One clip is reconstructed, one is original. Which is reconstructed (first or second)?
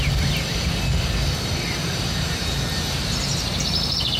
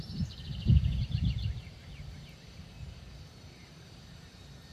second